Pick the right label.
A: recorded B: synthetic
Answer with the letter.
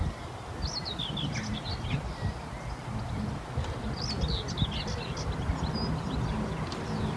A